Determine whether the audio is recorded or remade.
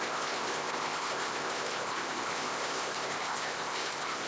remade